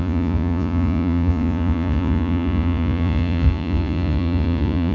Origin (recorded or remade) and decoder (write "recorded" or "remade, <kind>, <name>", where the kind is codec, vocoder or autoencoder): remade, vocoder, Vocos